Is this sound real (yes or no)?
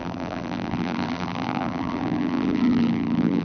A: no